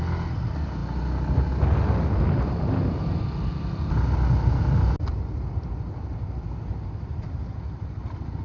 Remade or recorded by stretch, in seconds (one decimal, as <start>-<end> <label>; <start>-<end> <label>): 0.0-8.4 recorded